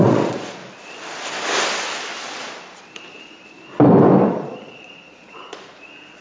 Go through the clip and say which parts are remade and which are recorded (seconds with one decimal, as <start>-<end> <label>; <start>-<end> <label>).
0.0-0.6 remade; 0.6-4.3 recorded; 4.3-6.2 remade